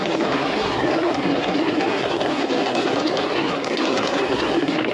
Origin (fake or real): fake